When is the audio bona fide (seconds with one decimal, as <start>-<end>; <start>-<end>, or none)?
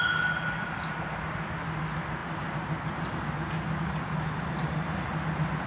0.0-4.6; 5.1-5.7